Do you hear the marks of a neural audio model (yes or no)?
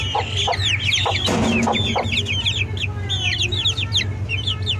no